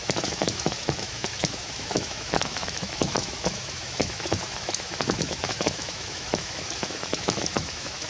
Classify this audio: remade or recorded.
remade